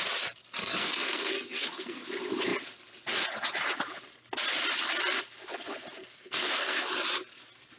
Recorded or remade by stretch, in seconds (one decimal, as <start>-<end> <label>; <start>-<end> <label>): 0.0-0.6 recorded; 0.6-2.1 remade; 2.1-6.0 recorded; 6.0-6.9 remade; 6.9-7.8 recorded